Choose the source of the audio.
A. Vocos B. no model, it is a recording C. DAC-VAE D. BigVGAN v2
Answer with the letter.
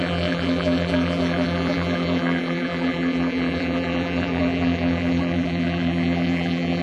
D